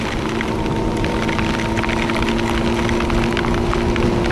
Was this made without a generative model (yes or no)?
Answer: yes